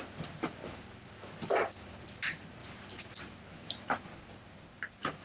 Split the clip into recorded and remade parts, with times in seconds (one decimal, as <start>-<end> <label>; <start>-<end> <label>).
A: 0.0-5.2 recorded